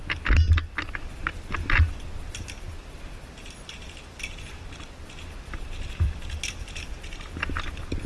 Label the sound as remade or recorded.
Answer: recorded